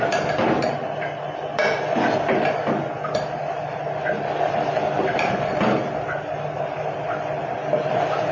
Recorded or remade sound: recorded